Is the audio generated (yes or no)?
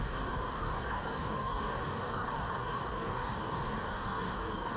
yes